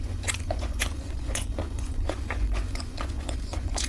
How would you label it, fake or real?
fake